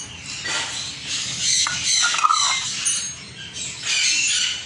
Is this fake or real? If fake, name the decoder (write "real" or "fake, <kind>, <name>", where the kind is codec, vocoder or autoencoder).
real